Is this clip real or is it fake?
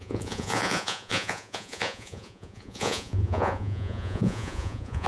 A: fake